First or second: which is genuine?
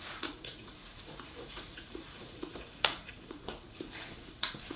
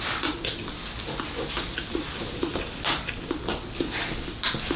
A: second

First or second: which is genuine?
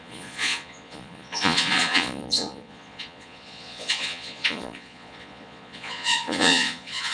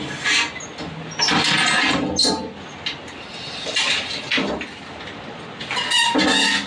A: second